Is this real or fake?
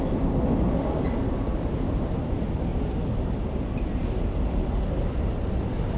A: real